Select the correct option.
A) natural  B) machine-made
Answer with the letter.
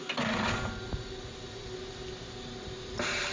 A